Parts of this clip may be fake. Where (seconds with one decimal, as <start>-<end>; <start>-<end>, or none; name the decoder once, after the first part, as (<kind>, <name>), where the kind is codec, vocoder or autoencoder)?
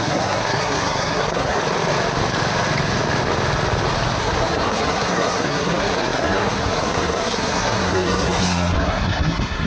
0.0-1.6 (codec, SNAC); 4.2-9.7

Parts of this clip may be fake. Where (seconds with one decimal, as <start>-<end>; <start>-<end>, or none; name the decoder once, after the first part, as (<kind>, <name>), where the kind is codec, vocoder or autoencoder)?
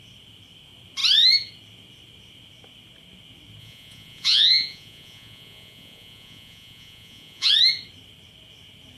3.6-7.5 (vocoder, Vocos)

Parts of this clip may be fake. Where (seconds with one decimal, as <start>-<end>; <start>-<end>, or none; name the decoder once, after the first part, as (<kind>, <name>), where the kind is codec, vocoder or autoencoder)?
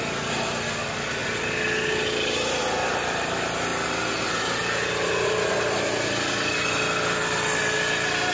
none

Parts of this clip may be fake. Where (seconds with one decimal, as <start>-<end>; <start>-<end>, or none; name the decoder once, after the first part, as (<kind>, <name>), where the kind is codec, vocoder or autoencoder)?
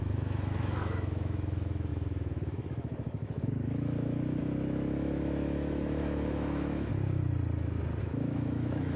0.0-6.9 (autoencoder, DAC-VAE); 8.0-9.0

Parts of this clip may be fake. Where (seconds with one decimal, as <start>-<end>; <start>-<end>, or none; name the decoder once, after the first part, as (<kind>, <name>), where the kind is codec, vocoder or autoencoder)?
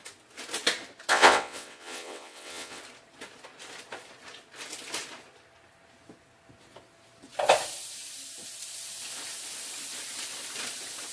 1.1-2.8 (vocoder, WaveNeXt)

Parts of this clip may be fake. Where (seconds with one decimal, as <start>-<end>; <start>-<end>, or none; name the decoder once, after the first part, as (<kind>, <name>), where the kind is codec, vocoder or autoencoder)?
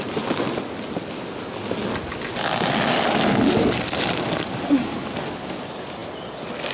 none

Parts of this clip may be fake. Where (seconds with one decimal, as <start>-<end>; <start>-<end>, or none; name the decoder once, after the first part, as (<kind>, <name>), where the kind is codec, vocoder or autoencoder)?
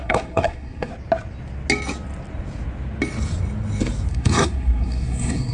0.0-0.9 (codec, SNAC); 4.1-5.5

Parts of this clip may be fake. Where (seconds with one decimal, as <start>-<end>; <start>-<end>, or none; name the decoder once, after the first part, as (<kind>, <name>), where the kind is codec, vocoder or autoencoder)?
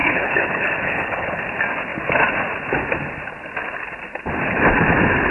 0.0-1.4 (codec, HILCodec)